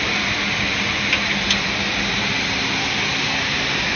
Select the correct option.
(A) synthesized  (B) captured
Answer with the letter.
B